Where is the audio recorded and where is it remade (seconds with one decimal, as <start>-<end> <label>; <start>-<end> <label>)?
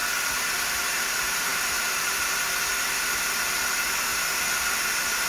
0.0-0.5 recorded; 0.5-5.3 remade